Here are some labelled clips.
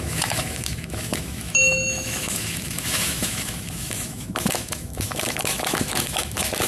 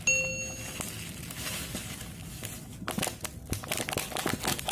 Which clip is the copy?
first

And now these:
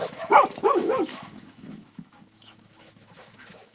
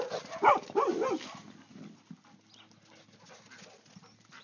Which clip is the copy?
first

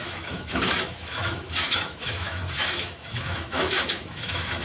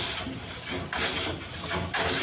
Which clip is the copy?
first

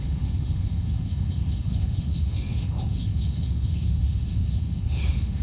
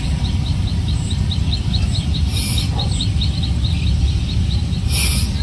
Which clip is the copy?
first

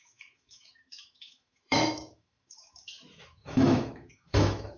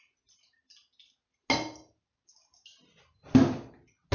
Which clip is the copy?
first